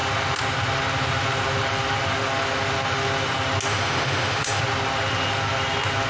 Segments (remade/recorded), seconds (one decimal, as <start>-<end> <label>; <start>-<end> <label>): 0.0-3.7 recorded; 3.7-4.6 remade; 4.6-6.1 recorded